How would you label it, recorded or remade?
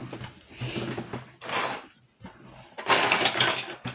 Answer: recorded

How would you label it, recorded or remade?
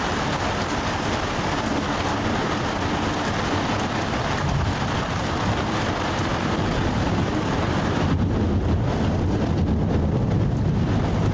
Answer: recorded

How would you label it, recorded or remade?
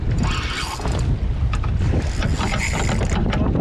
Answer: recorded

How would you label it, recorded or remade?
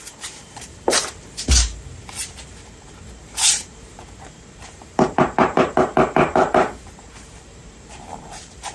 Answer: remade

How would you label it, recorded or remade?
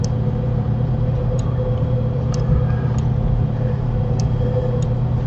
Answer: remade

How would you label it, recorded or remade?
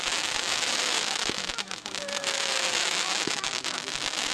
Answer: remade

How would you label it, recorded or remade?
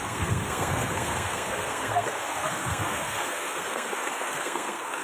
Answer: remade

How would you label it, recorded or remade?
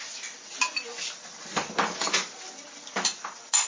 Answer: recorded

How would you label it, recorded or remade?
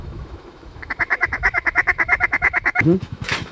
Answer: remade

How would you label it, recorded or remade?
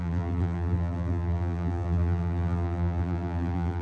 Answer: remade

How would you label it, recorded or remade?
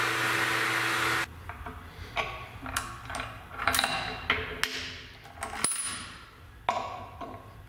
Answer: recorded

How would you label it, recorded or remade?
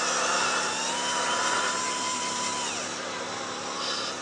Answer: recorded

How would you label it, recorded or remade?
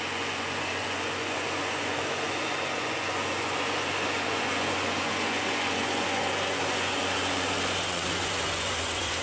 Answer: remade